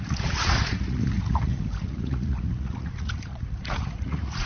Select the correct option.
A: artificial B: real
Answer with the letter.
A